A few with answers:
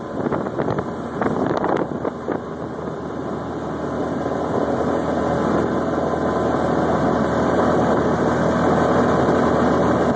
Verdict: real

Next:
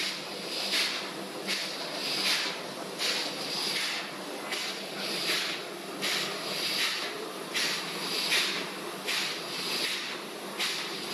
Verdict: real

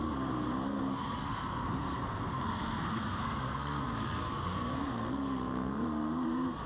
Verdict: fake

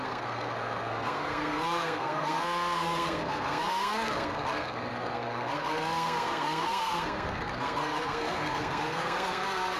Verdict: fake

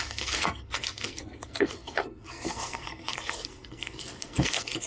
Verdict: fake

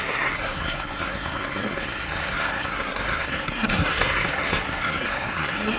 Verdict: fake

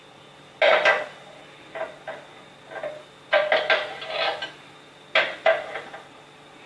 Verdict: real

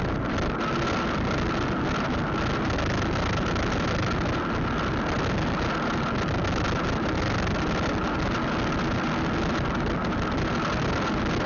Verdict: real